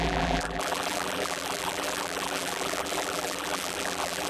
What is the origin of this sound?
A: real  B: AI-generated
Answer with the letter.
B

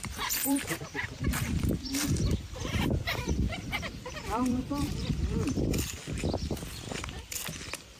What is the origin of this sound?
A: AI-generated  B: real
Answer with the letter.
A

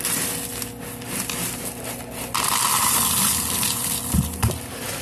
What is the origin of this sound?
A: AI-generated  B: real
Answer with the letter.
A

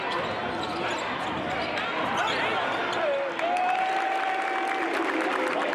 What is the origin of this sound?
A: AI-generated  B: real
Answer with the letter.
B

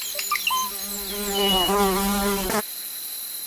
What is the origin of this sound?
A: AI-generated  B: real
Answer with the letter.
B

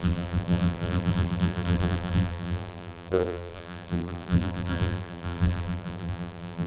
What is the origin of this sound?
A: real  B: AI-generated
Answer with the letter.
B